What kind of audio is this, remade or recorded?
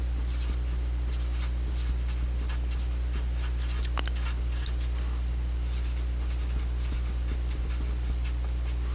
recorded